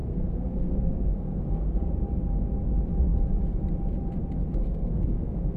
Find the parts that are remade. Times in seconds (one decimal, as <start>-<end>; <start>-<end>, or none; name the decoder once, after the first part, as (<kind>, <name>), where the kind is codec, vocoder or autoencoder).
0.0-1.9 (codec, SNAC); 4.5-5.6